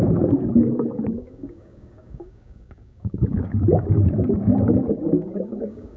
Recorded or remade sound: remade